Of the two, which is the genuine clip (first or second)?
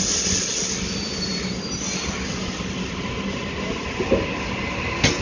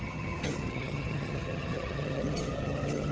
first